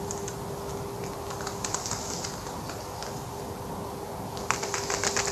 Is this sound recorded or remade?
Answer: recorded